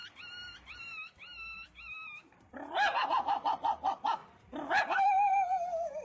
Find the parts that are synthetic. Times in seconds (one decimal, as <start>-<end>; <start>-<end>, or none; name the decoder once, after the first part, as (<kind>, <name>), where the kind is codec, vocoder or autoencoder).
0.0-4.2 (vocoder, BigVGAN v2); 4.8-6.0